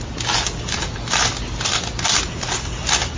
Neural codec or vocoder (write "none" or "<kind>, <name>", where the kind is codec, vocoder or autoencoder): none